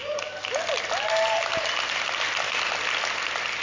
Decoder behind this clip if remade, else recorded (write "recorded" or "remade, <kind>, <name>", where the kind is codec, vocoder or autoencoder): recorded